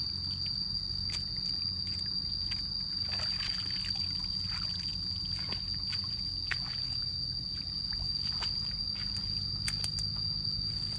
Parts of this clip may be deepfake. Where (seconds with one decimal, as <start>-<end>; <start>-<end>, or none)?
none